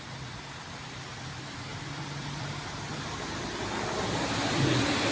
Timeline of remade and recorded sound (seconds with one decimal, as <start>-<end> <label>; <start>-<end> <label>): 0.0-5.1 remade